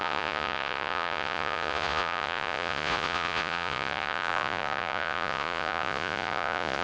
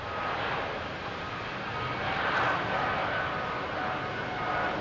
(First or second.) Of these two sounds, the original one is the second